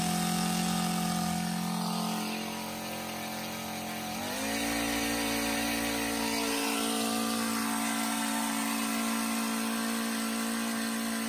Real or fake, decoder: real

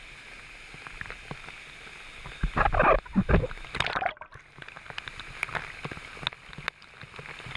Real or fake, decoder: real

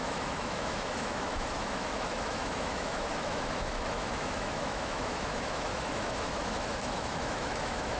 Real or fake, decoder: fake, autoencoder, DAC-VAE